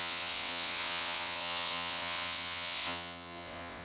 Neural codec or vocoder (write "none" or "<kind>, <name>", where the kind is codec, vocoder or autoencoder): vocoder, WaveNeXt